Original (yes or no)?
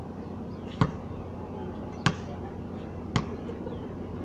yes